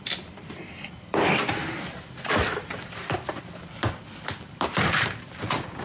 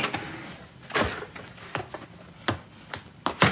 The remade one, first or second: first